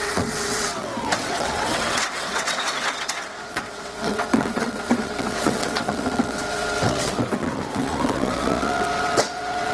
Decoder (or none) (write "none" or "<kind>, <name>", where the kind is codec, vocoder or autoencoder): vocoder, WaveNeXt